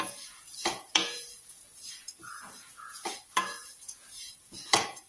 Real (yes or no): no